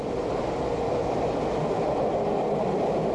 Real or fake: real